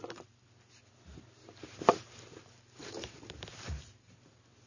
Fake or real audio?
real